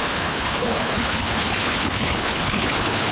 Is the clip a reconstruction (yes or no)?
yes